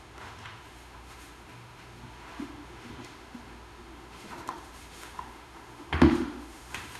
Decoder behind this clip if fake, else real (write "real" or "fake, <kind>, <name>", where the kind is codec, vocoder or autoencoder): fake, autoencoder, DAC-VAE